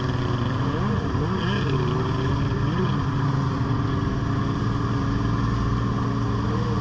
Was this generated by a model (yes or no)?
no